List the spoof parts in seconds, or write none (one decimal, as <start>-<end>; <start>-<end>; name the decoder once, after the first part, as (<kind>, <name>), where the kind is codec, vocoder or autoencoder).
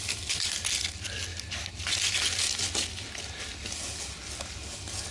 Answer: none